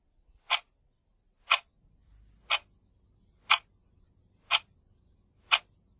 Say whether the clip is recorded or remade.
recorded